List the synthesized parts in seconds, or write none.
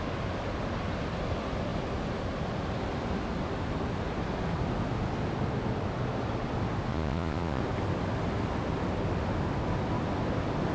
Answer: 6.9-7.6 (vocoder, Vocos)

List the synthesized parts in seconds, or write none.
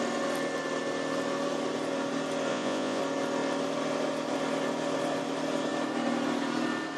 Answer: 2.5-3.0 (vocoder, Vocos)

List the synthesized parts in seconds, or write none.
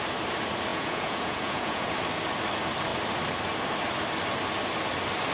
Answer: 0.7-1.9 (vocoder, Vocos)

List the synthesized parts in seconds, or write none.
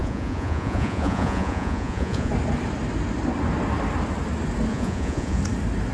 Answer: 0.0-2.3 (vocoder, Vocos); 4.7-5.4